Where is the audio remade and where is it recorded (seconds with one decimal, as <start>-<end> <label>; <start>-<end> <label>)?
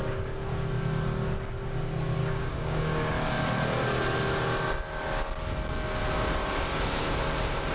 0.0-2.2 recorded; 2.2-3.1 remade; 3.1-7.7 recorded